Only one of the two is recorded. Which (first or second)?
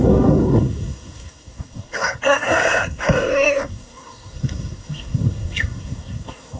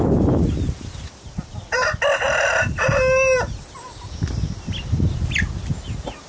second